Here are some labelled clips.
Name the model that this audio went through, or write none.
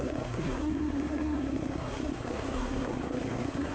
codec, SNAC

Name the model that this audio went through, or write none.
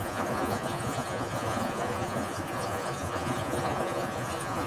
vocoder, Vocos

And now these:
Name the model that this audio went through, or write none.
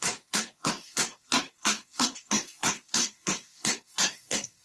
codec, SNAC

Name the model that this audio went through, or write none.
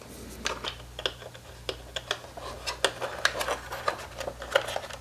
none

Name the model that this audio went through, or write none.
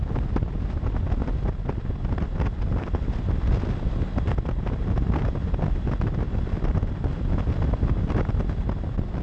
none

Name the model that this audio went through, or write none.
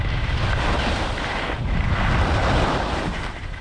none